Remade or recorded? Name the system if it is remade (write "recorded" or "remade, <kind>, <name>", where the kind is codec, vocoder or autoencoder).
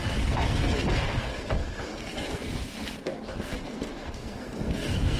remade, codec, SNAC